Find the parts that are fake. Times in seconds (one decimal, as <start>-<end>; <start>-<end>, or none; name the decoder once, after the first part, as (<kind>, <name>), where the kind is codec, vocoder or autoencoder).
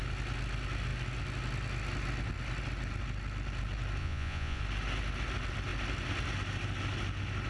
4.0-4.6 (vocoder, Vocos)